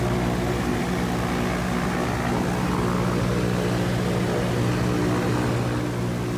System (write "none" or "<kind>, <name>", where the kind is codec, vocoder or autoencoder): none